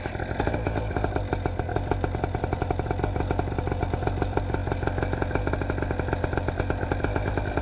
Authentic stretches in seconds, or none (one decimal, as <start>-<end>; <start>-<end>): 0.0-7.6